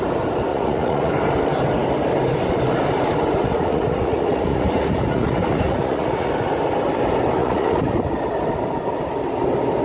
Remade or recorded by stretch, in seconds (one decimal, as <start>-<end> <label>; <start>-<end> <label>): 0.0-0.5 recorded; 0.5-1.1 remade; 1.1-3.4 recorded; 3.4-6.3 remade; 6.3-7.4 recorded; 7.4-8.0 remade; 8.0-9.8 recorded